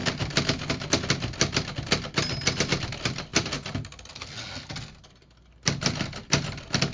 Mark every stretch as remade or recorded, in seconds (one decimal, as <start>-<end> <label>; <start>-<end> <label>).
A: 0.0-6.9 recorded

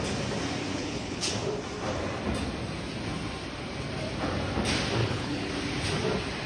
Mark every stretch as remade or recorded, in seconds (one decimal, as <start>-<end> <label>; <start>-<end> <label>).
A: 0.0-0.7 recorded; 0.7-1.3 remade; 1.3-5.0 recorded; 5.0-5.5 remade; 5.5-6.5 recorded

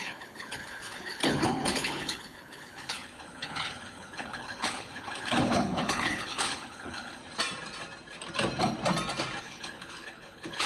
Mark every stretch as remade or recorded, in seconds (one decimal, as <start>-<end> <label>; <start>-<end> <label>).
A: 0.0-7.2 remade; 7.2-9.4 recorded; 9.4-10.7 remade

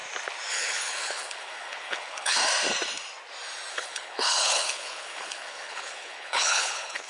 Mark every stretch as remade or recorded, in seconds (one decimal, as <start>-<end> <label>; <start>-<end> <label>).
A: 0.0-0.5 recorded; 0.5-2.4 remade; 2.4-3.7 recorded; 3.7-7.1 remade

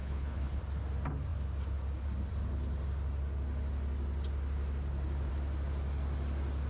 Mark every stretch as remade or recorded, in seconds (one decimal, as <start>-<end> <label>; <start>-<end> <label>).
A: 0.0-0.6 remade; 0.6-6.7 recorded

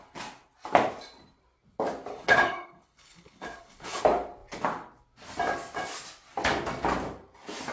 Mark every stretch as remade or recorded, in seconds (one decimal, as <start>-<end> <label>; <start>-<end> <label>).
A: 0.0-2.1 recorded; 2.1-4.0 remade; 4.0-7.7 recorded